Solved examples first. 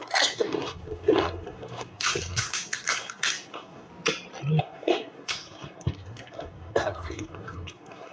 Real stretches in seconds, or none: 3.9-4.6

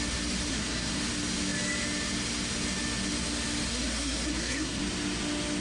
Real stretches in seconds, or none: 0.0-0.5; 1.0-3.7; 4.8-5.6

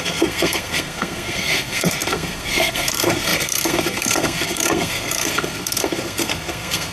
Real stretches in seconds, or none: none

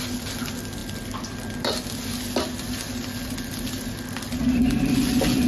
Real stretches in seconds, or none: 0.0-5.5

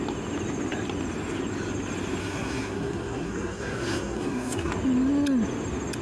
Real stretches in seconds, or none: 0.0-2.2; 4.7-6.0